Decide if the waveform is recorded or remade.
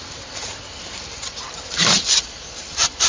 remade